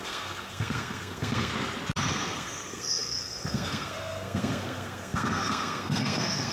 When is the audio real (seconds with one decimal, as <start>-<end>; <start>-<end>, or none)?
1.5-2.1